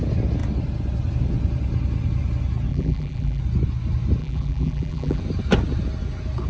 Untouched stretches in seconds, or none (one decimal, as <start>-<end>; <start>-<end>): 0.0-2.7; 3.4-4.2; 5.2-6.5